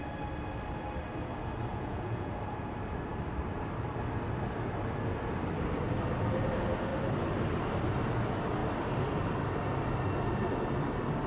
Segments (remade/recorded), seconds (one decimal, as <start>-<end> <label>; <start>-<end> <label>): 0.0-1.7 recorded; 1.7-2.3 remade; 2.3-11.3 recorded